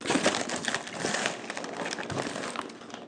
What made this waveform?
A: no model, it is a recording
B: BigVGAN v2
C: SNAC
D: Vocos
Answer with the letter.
A